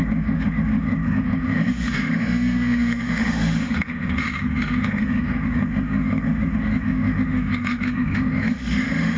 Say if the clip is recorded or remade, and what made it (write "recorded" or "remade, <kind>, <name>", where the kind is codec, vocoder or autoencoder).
remade, autoencoder, DAC-VAE